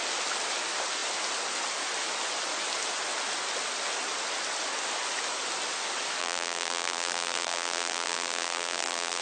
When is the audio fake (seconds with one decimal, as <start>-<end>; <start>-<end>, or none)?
6.2-9.2